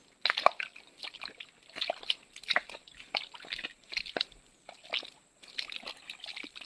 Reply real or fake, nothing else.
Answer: real